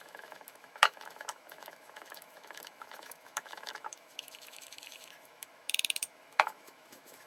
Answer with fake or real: fake